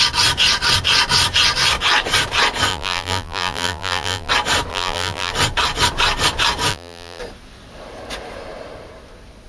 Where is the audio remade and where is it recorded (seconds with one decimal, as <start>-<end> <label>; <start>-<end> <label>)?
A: 0.0-2.7 recorded; 2.7-4.3 remade; 4.3-4.7 recorded; 4.7-5.3 remade; 5.3-6.7 recorded; 6.7-7.2 remade; 7.2-9.5 recorded